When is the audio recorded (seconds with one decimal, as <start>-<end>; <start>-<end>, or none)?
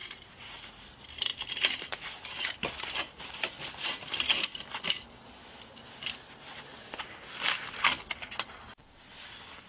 0.7-1.3; 3.2-3.8; 4.3-9.7